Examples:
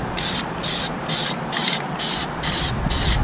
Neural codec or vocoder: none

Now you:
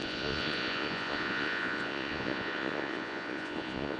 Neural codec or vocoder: vocoder, Vocos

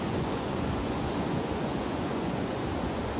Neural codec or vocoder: vocoder, Vocos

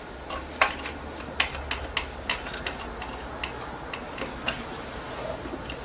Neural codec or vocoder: none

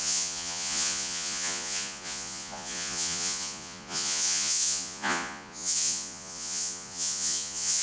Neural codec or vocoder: vocoder, Vocos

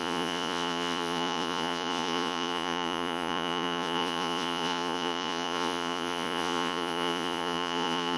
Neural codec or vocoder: vocoder, Vocos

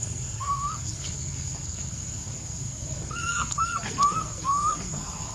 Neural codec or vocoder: codec, SNAC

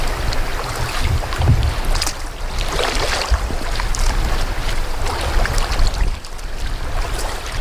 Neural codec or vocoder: none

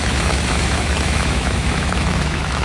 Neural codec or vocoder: autoencoder, DAC-VAE